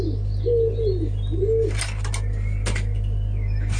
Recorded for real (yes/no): yes